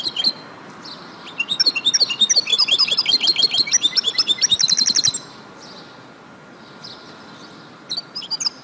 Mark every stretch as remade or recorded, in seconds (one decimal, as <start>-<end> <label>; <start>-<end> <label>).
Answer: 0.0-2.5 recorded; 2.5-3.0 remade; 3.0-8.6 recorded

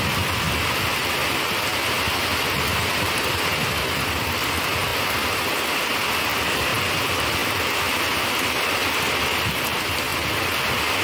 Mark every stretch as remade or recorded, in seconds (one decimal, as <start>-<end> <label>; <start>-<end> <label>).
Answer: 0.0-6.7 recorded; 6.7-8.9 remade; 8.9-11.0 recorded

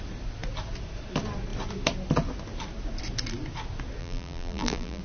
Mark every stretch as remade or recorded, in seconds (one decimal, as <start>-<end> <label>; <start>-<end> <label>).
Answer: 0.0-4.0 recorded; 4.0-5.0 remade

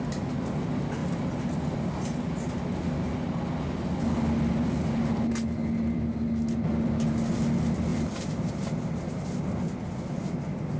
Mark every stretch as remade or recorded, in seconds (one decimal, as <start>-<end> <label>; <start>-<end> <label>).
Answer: 0.0-10.8 recorded

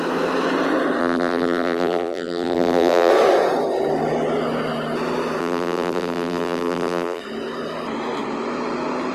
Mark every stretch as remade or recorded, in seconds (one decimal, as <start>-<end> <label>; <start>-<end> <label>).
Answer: 0.0-1.0 recorded; 1.0-3.1 remade; 3.1-5.4 recorded; 5.4-7.2 remade; 7.2-9.1 recorded